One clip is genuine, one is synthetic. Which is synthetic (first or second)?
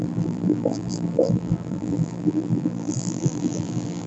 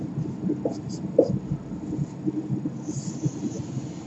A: first